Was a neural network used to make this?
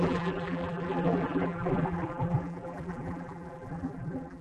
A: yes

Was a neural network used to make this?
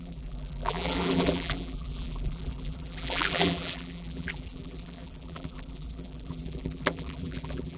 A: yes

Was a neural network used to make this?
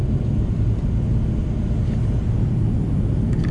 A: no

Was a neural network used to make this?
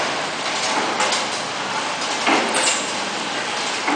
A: no